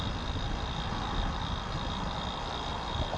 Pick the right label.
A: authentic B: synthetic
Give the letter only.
A